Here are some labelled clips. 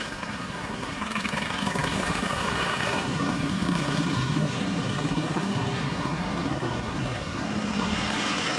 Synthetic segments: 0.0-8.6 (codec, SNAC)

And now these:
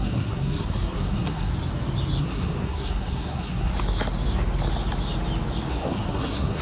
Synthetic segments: 0.0-1.5 (codec, SNAC); 2.2-3.7; 5.7-6.6

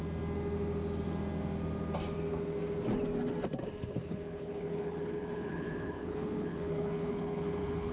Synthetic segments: 3.8-7.9 (codec, HILCodec)

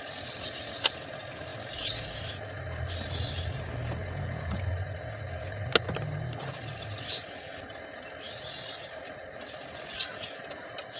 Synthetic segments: none